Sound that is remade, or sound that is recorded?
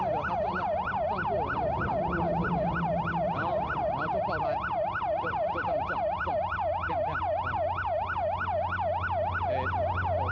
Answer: recorded